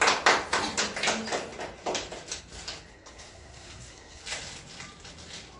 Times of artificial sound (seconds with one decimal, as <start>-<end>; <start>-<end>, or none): 2.9-4.2

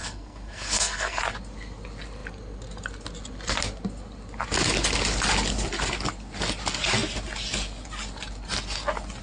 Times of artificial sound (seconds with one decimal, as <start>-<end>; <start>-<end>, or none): 0.0-1.2